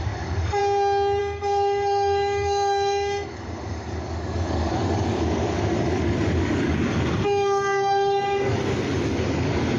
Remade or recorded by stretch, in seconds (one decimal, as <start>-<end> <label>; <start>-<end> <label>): 0.0-0.6 remade; 0.6-1.2 recorded; 1.2-9.8 remade